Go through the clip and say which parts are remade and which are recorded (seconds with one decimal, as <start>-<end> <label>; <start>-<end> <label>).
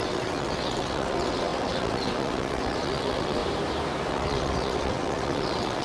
0.0-3.4 remade; 3.4-4.1 recorded; 4.1-5.8 remade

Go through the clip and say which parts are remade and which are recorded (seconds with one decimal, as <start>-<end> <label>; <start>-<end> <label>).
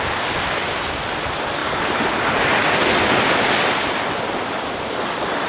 0.0-5.5 recorded